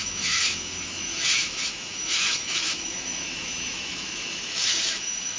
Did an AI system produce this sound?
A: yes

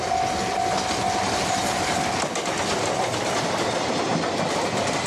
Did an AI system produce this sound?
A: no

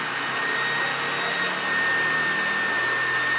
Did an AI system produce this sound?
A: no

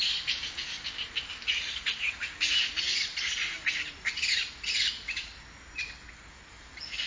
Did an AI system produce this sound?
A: no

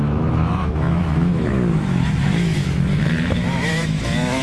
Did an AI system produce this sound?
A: yes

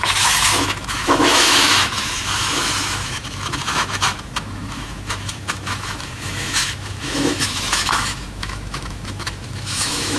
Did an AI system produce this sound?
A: yes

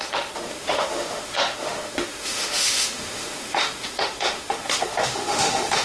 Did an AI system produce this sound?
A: yes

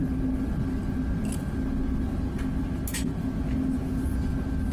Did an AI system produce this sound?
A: no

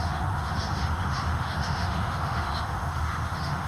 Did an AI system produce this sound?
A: yes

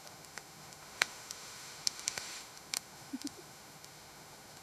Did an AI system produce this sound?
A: yes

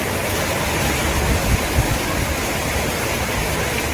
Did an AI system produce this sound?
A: no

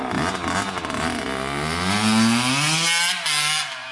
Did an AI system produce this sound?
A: no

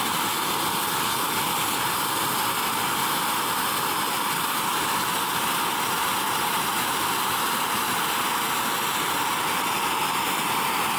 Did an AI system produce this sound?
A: no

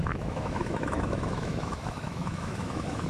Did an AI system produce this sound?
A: yes